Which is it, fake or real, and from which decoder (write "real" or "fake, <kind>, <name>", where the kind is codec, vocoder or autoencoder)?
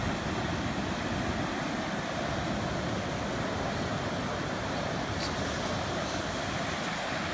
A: real